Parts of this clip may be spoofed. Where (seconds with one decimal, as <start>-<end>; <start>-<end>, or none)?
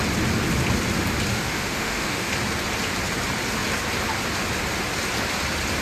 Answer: 1.3-2.3